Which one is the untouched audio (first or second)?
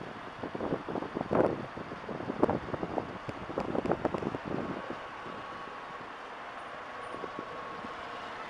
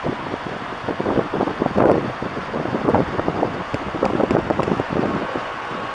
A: first